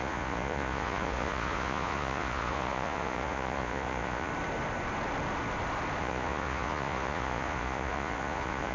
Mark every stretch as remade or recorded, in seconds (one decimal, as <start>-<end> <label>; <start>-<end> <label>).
0.0-4.3 remade; 4.3-6.0 recorded; 6.0-8.7 remade